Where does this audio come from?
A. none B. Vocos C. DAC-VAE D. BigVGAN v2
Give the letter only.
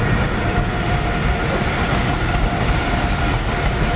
A